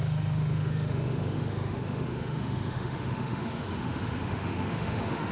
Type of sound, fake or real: fake